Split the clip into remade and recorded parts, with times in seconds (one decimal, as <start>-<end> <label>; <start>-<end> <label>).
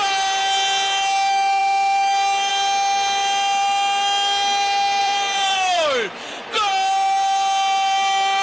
0.0-5.0 recorded; 5.0-6.5 remade; 6.5-8.4 recorded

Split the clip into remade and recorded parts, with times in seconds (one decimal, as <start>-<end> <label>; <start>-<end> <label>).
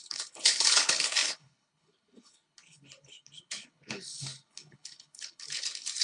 0.0-6.0 remade